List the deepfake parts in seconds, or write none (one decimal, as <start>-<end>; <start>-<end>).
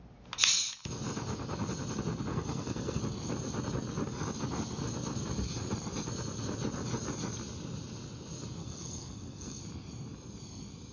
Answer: 2.3-3.0; 8.6-9.6